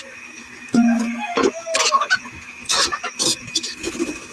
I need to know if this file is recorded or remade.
remade